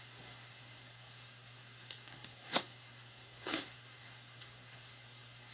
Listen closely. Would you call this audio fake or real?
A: fake